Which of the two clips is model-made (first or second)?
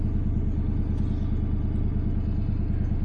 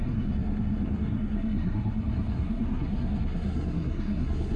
second